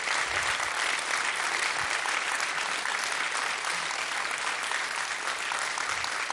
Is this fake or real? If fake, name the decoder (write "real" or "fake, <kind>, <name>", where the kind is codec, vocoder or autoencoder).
real